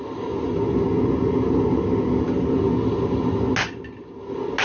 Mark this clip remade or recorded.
recorded